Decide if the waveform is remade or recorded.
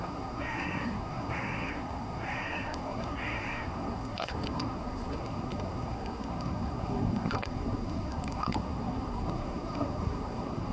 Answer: remade